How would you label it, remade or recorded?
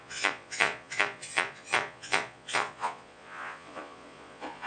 remade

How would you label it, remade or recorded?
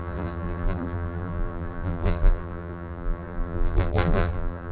remade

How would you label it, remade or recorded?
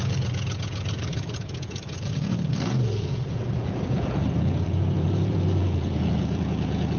remade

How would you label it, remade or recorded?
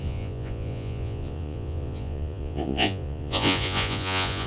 remade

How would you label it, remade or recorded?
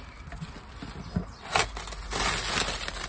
recorded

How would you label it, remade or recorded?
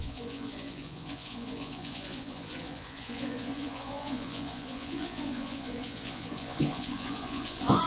remade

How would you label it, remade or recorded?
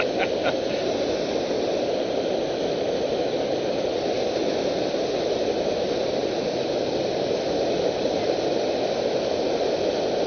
recorded